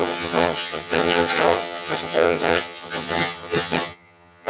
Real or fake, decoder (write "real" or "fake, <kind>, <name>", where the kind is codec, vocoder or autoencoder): fake, vocoder, HiFi-GAN